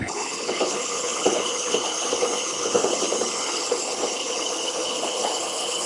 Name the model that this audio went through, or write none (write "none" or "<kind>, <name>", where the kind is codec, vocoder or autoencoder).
codec, HILCodec